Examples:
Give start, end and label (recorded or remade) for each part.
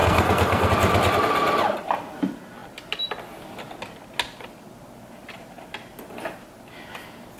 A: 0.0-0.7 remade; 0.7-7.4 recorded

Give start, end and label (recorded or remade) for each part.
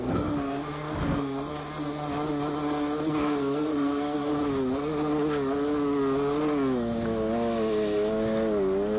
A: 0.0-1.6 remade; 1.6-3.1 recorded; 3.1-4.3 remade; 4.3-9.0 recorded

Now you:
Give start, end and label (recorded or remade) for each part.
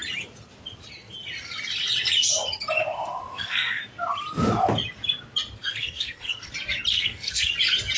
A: 0.0-3.3 recorded; 3.3-3.8 remade; 3.8-5.6 recorded; 5.6-6.5 remade; 6.5-6.9 recorded; 6.9-7.5 remade; 7.5-8.0 recorded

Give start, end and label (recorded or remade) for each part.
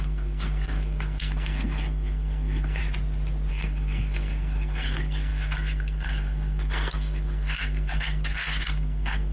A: 0.0-2.8 remade; 2.8-3.5 recorded; 3.5-9.3 remade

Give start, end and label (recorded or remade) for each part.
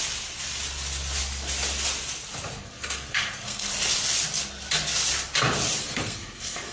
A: 0.0-2.6 recorded; 2.6-3.7 remade; 3.7-5.8 recorded; 5.8-6.7 remade